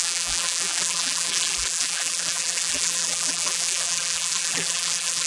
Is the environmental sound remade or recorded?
remade